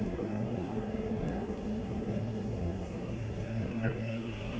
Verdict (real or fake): fake